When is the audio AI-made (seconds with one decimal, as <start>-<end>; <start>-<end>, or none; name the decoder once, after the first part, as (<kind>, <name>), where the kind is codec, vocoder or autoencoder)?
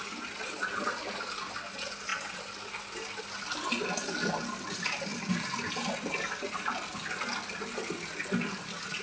none